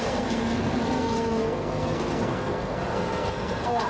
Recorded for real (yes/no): no